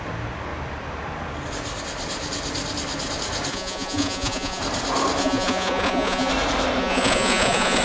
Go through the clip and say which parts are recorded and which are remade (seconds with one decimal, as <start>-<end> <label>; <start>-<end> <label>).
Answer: 0.0-3.5 recorded; 3.5-4.6 remade; 4.6-5.2 recorded; 5.2-6.3 remade; 6.3-6.8 recorded; 6.8-7.8 remade